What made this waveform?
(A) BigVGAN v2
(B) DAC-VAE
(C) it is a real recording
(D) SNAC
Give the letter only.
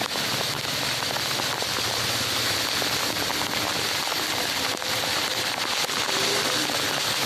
C